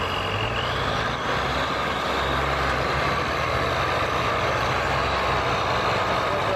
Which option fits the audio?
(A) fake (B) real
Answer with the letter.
B